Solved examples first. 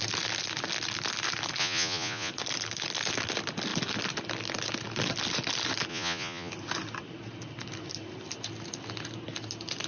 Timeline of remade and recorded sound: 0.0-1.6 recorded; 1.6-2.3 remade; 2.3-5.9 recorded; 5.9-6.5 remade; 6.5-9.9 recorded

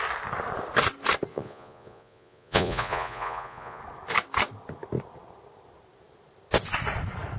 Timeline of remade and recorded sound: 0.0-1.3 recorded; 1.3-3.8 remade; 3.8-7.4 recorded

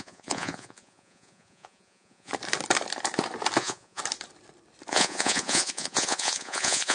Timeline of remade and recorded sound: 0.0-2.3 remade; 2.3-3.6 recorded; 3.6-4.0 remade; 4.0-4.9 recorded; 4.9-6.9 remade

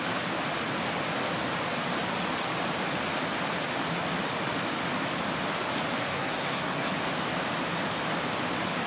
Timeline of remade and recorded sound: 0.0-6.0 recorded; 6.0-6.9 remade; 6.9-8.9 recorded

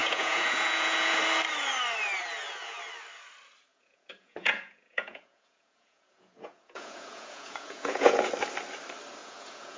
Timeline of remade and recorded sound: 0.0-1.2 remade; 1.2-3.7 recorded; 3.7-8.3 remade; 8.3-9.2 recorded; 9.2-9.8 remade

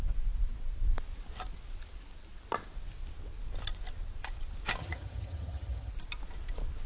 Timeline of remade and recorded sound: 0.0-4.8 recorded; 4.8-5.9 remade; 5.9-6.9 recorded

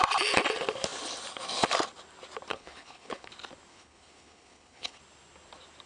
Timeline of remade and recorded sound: 0.0-2.5 recorded; 2.5-3.3 remade; 3.3-3.7 recorded; 3.7-5.0 remade; 5.0-5.9 recorded

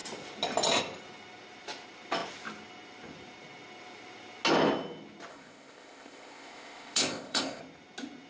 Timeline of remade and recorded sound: 0.0-5.3 recorded; 5.3-7.6 remade; 7.6-8.3 recorded